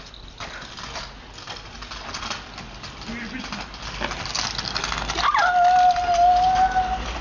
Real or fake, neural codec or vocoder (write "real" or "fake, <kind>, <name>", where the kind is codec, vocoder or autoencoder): real